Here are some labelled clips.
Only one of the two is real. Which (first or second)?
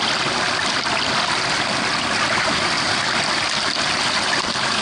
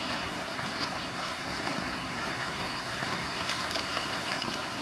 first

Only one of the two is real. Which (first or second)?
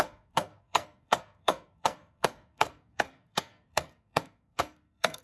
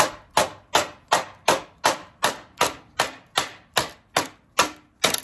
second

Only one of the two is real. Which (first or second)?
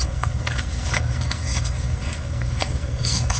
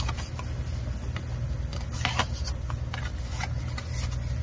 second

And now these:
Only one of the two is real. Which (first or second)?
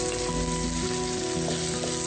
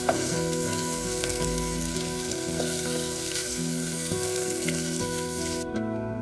first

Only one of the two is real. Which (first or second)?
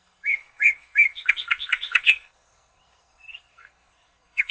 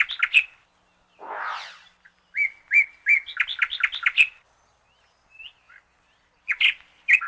second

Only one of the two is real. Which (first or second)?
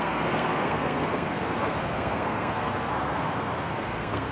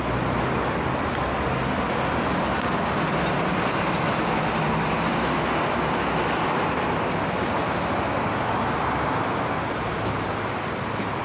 second